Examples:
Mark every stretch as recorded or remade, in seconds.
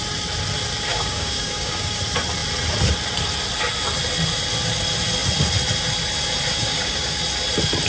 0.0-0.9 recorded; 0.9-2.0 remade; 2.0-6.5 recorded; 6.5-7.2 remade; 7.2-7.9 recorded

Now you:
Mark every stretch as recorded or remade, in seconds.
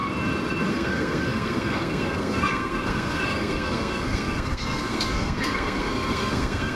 0.0-0.7 recorded; 0.7-6.8 remade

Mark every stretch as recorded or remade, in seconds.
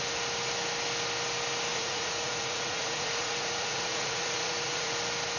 0.0-1.7 recorded; 1.7-4.9 remade; 4.9-5.4 recorded